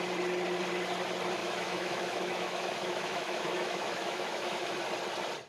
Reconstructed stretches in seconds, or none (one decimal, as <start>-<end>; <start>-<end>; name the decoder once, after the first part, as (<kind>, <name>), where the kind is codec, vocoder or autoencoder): 1.4-4.7 (autoencoder, DAC-VAE)